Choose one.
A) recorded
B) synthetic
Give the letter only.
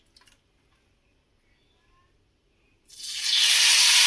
A